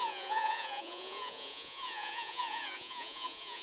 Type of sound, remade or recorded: remade